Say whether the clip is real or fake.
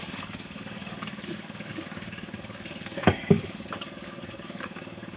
fake